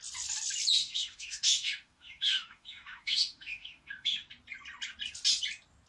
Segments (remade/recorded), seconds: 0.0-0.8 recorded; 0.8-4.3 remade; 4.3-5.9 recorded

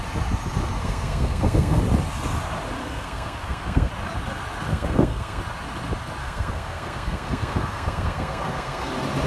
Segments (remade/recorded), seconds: 0.0-0.8 recorded; 0.8-1.8 remade; 1.8-2.8 recorded; 2.8-3.9 remade; 3.9-4.7 recorded; 4.7-5.4 remade; 5.4-6.2 recorded; 6.2-8.9 remade; 8.9-9.3 recorded

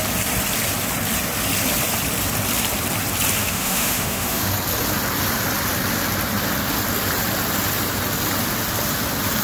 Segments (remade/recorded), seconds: 0.0-3.4 recorded; 3.4-4.5 remade; 4.5-9.4 recorded

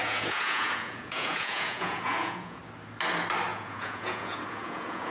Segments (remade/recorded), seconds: 0.0-2.6 remade; 2.6-3.5 recorded; 3.5-5.1 remade

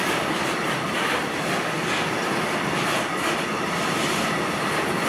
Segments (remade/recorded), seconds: 0.0-5.1 recorded

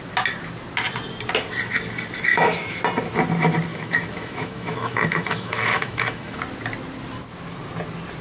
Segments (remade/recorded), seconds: 0.0-2.3 recorded; 2.3-2.8 remade; 2.8-3.7 recorded; 3.7-6.4 remade; 6.4-8.2 recorded